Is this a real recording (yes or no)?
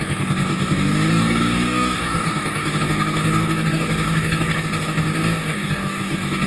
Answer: no